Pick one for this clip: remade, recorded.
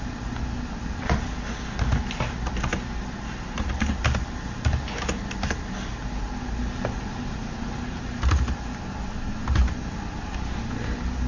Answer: recorded